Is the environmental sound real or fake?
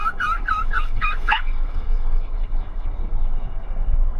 fake